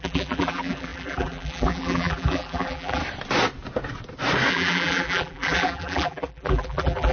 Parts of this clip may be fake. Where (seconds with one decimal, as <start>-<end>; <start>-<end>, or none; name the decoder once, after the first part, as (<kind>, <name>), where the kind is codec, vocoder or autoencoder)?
0.0-3.0 (vocoder, BigVGAN v2); 4.5-7.1